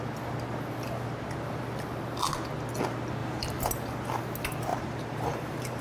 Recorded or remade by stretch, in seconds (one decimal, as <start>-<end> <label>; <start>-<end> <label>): 0.0-3.2 recorded; 3.2-3.7 remade; 3.7-4.7 recorded; 4.7-5.8 remade